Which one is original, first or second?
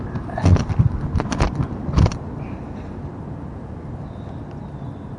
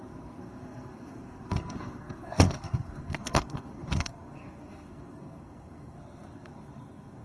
first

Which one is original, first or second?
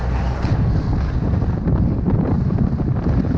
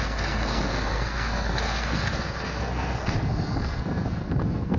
first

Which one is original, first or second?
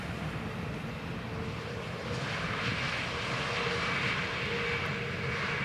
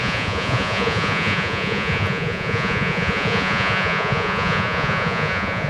first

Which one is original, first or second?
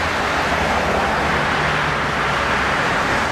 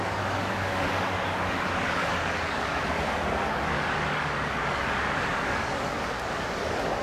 first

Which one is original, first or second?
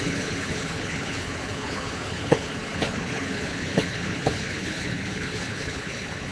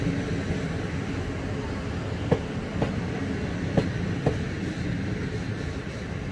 second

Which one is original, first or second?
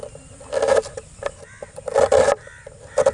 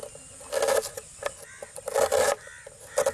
second